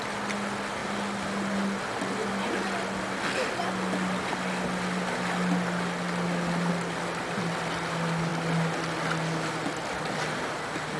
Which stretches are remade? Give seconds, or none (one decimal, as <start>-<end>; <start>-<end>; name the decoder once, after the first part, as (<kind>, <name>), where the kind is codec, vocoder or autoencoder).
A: none